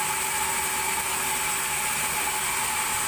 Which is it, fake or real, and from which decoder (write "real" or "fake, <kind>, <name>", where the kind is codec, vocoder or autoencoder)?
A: real